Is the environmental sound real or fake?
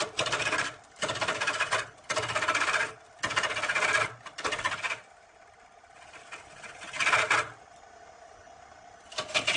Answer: real